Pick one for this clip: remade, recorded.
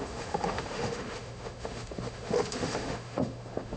remade